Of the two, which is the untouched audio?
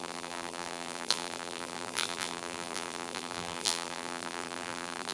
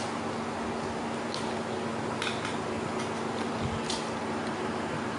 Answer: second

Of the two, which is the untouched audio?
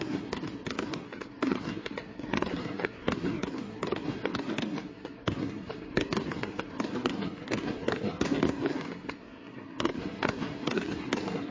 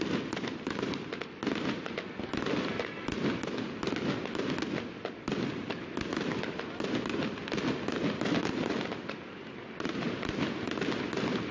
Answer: second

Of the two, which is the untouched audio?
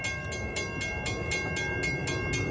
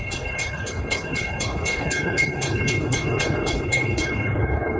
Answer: first